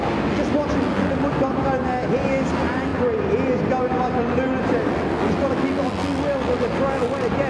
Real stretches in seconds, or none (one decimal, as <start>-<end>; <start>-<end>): 0.0-7.5